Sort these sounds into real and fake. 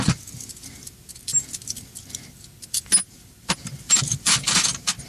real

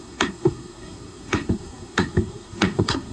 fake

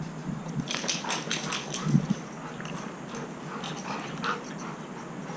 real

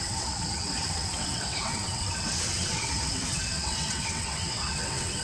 fake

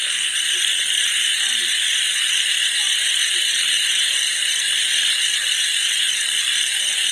fake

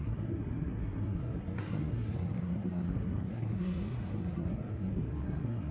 fake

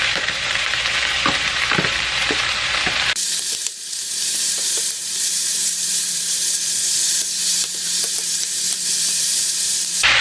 fake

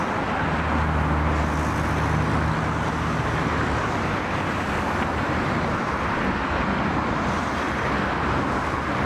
real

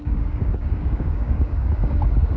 fake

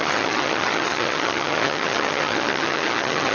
fake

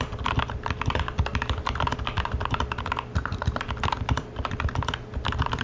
real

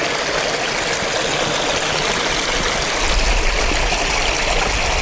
real